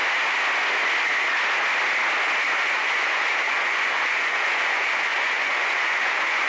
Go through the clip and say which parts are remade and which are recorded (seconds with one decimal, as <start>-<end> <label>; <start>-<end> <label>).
0.0-2.6 recorded; 2.6-6.5 remade